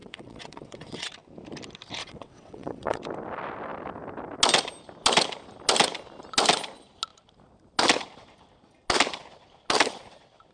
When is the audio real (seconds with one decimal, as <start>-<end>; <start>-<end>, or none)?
1.1-2.0; 3.0-10.5